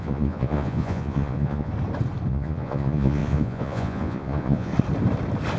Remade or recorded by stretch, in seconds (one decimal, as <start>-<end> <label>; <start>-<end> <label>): 0.0-1.7 remade; 1.7-2.3 recorded; 2.3-4.7 remade; 4.7-5.6 recorded